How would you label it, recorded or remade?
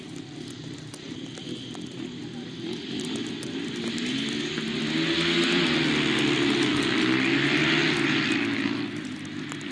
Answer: recorded